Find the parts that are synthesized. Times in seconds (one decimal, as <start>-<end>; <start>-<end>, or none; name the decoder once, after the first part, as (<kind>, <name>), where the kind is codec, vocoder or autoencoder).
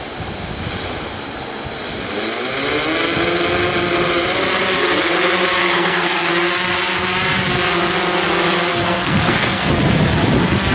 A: 5.6-6.3 (codec, SNAC); 8.7-9.7